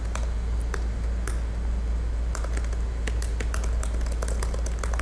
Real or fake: real